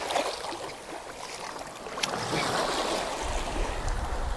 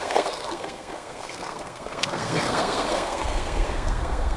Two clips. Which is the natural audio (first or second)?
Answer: first